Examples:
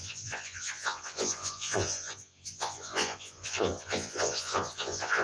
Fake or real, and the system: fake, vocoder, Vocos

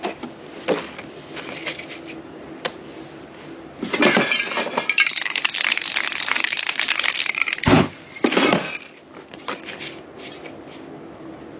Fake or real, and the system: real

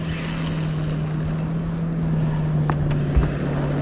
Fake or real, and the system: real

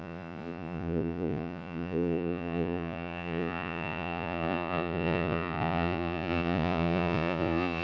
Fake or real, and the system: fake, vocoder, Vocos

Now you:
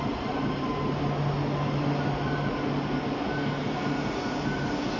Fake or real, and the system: real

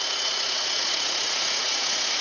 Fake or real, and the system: fake, vocoder, Vocos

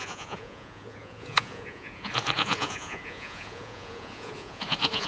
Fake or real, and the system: fake, vocoder, Vocos